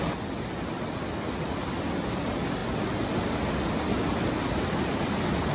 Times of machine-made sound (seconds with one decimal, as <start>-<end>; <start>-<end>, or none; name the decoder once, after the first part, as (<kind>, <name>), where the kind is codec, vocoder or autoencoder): none